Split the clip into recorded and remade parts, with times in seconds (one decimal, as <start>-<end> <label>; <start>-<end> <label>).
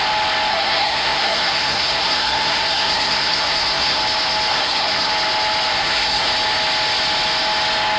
0.0-0.5 recorded; 0.5-4.0 remade; 4.0-4.5 recorded; 4.5-5.1 remade; 5.1-5.7 recorded; 5.7-6.3 remade; 6.3-8.0 recorded